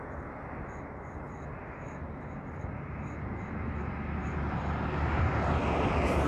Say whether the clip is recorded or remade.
recorded